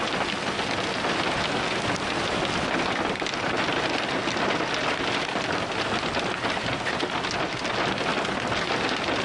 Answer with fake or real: real